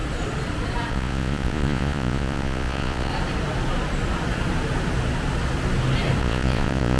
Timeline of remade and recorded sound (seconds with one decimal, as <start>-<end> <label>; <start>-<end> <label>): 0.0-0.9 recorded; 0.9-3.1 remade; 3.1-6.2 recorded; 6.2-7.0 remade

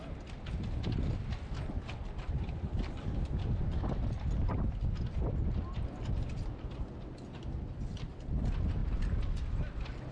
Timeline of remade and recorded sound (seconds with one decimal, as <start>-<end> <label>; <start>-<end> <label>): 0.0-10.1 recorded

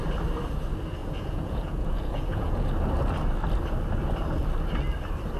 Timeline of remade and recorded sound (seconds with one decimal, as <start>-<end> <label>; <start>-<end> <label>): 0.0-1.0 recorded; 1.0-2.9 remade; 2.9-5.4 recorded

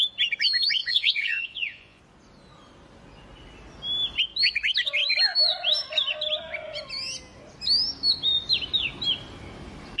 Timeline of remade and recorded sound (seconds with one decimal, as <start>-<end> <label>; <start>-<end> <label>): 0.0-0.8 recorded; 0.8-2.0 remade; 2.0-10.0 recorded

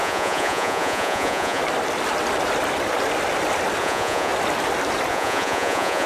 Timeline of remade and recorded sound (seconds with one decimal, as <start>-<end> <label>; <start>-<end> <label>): 0.0-1.6 remade; 1.6-3.8 recorded; 3.8-4.3 remade; 4.3-5.1 recorded; 5.1-6.1 remade